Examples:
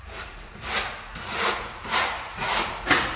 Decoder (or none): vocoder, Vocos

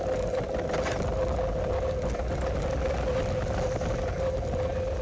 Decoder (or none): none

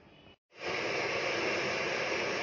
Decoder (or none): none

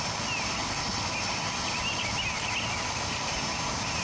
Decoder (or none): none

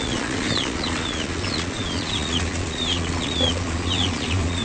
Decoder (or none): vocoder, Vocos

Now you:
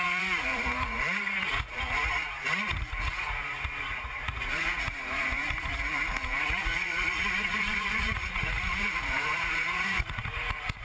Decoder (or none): vocoder, Vocos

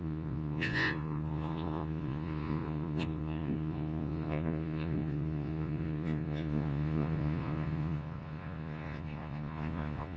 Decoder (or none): vocoder, Vocos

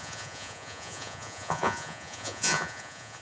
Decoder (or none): vocoder, Vocos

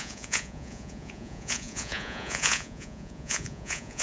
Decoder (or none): vocoder, Vocos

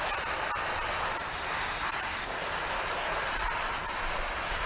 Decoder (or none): none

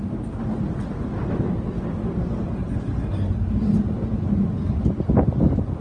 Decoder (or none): none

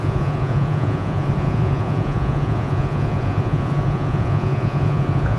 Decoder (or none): vocoder, Vocos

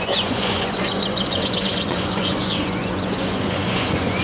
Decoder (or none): vocoder, Vocos